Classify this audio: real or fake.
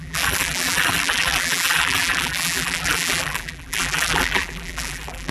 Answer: fake